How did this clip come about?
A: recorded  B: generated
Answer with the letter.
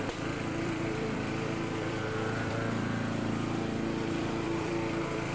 B